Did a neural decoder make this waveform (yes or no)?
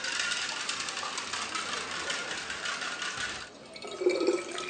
no